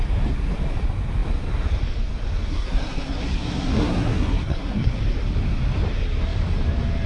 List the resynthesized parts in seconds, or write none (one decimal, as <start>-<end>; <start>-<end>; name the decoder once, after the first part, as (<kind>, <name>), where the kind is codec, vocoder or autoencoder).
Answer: 2.5-5.0 (codec, SNAC)